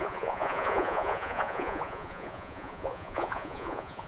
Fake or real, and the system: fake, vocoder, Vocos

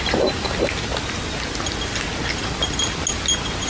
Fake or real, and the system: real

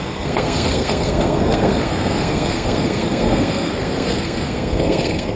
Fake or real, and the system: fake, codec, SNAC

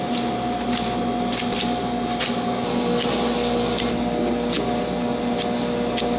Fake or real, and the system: real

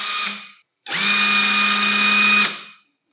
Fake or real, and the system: real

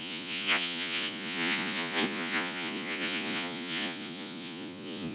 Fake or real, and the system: fake, vocoder, Vocos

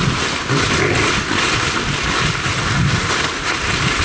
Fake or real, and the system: real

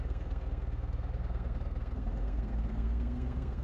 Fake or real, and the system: fake, codec, SNAC